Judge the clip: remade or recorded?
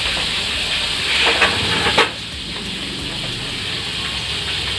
recorded